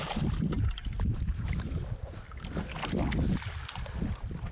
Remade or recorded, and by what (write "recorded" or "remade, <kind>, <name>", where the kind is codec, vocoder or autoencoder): recorded